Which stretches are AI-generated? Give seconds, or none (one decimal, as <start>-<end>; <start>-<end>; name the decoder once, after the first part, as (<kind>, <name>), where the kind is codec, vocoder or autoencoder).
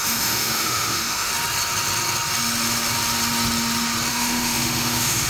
0.0-1.3 (autoencoder, DAC-VAE); 4.1-5.3